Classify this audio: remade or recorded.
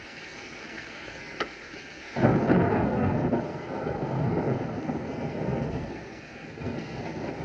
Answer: remade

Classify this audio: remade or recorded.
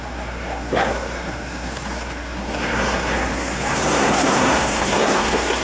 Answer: remade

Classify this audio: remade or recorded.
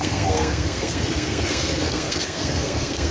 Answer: remade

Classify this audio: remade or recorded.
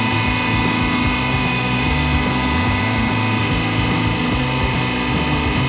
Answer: recorded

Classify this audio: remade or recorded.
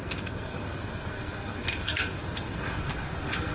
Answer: remade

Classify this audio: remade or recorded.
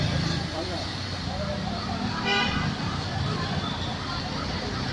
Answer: recorded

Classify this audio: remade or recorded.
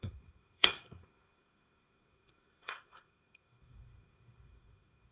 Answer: remade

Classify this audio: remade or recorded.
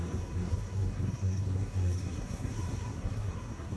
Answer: remade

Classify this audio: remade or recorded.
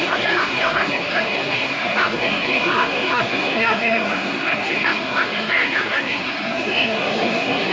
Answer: remade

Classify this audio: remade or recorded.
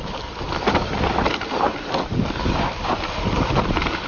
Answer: recorded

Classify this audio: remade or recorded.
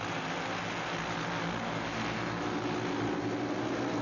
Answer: recorded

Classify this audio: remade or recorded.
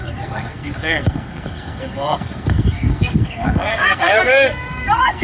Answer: remade